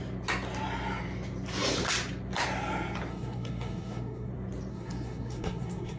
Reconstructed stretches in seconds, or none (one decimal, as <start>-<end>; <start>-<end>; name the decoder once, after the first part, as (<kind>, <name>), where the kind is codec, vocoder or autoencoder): 3.1-4.3 (codec, SNAC); 4.7-6.0